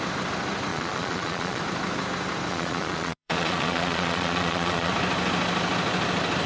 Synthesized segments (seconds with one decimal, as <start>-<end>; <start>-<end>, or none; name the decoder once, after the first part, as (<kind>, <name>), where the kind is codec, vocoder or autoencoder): 0.7-1.6 (vocoder, Vocos); 2.5-4.9